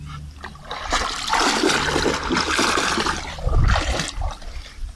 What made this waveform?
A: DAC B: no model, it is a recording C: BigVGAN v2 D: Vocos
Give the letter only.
B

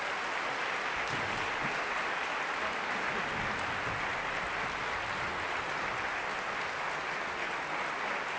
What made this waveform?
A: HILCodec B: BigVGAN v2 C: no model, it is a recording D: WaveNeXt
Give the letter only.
C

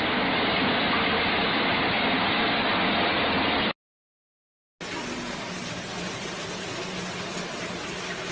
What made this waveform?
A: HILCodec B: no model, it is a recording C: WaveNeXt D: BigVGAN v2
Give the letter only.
B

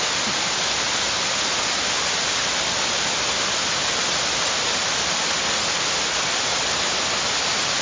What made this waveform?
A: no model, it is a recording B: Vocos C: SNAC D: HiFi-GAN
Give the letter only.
A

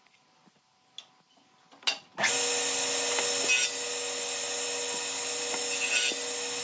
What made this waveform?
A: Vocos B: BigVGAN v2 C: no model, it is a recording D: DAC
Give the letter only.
C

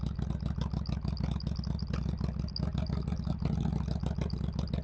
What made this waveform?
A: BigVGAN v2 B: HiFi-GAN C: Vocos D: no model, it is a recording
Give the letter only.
D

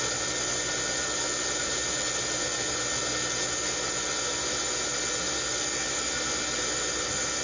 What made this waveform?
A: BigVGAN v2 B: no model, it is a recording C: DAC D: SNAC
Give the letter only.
B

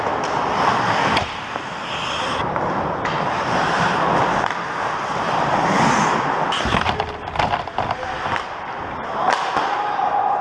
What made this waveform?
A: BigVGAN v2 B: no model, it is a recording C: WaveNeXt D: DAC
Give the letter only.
B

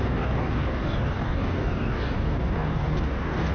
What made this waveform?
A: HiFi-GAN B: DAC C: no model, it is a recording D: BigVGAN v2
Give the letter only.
B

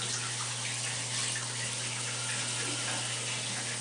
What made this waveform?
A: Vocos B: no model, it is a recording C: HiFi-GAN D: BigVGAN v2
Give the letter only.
B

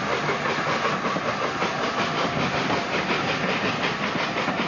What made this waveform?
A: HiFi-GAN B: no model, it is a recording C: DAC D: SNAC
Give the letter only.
B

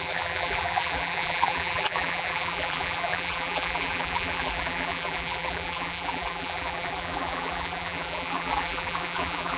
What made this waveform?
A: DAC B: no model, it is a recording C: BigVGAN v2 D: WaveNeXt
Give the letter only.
C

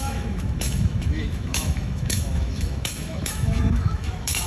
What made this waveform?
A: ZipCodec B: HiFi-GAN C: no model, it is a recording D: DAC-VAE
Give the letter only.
D